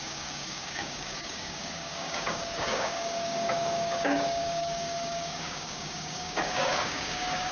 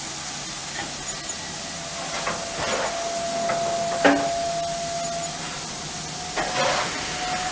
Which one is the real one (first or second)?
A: second